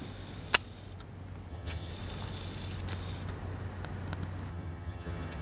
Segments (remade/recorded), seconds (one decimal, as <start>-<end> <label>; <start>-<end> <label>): 0.0-1.5 recorded; 1.5-1.9 remade; 1.9-4.5 recorded; 4.5-5.4 remade